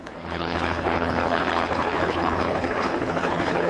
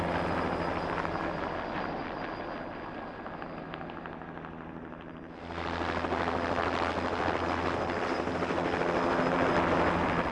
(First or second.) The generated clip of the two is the first